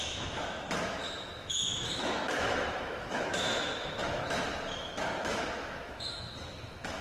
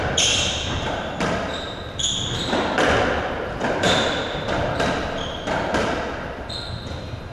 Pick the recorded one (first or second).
second